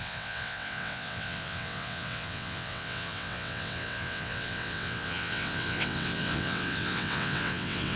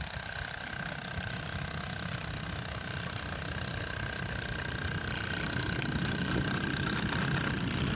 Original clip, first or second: second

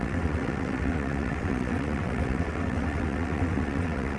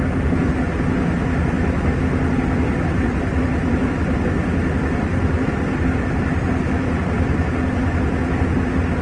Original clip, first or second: second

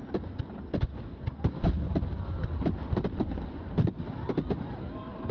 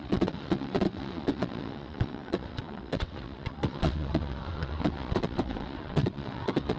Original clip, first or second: first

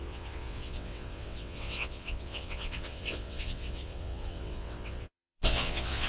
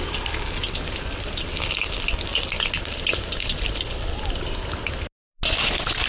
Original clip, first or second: second